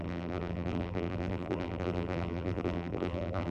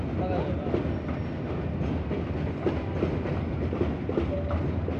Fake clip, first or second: first